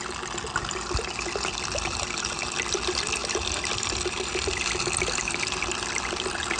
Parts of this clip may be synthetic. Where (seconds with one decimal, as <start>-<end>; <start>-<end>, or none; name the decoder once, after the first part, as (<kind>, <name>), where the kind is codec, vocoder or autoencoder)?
3.2-6.6 (vocoder, BigVGAN v2)